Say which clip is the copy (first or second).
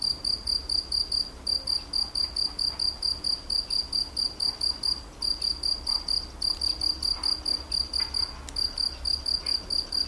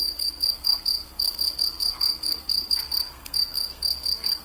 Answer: second